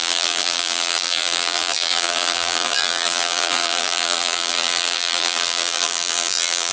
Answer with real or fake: fake